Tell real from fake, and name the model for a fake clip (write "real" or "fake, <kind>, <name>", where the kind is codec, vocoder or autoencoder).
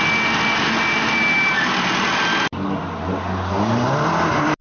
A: real